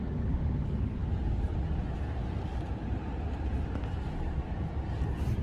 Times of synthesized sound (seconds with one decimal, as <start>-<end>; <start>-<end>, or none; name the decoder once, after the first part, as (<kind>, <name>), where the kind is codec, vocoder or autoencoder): 2.2-4.9 (vocoder, BigVGAN v2)